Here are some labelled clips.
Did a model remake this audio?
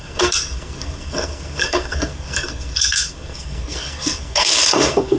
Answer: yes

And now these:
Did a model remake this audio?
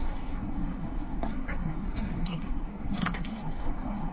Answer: yes